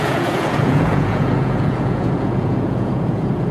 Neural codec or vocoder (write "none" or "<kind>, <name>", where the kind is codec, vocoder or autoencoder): vocoder, Vocos